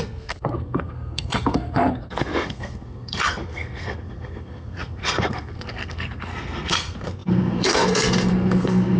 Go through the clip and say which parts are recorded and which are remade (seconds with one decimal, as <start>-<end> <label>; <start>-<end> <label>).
0.0-9.0 remade